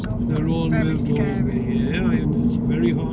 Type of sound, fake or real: real